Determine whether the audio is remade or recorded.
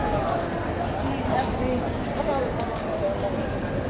recorded